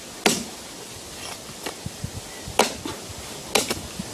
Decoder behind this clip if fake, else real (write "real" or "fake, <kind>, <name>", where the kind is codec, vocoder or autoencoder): real